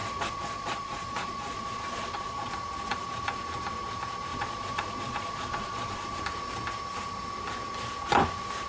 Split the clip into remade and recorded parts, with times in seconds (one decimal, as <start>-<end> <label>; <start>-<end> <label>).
0.0-2.5 remade; 2.5-4.3 recorded; 4.3-6.2 remade; 6.2-8.7 recorded